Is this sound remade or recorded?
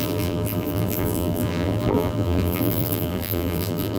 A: remade